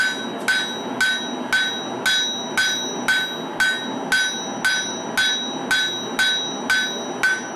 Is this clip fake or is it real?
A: real